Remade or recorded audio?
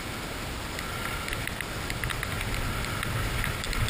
recorded